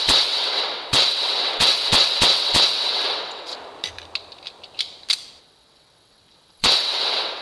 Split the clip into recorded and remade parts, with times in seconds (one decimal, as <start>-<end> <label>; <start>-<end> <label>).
0.0-3.5 remade; 3.5-5.4 recorded; 5.4-7.4 remade